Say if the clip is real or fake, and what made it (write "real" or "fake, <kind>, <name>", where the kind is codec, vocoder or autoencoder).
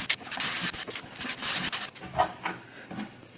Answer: real